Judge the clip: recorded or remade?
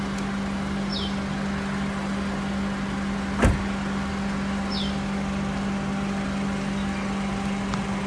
recorded